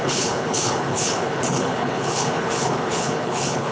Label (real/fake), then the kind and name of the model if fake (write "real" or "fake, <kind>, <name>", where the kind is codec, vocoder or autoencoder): fake, codec, HILCodec